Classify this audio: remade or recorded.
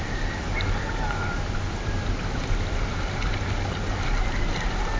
recorded